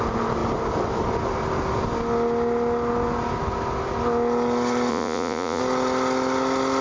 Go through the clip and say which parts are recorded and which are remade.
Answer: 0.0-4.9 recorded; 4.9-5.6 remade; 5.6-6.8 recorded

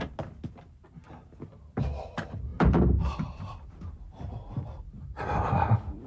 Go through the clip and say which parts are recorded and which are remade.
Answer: 0.0-2.5 recorded; 2.5-3.4 remade; 3.4-6.1 recorded

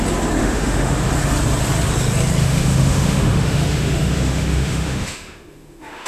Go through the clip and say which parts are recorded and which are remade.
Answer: 0.0-0.4 recorded; 0.4-1.1 remade; 1.1-2.4 recorded; 2.4-6.1 remade

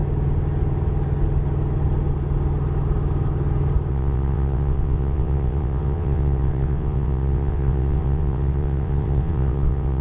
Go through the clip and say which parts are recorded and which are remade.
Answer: 0.0-3.9 recorded; 3.9-10.0 remade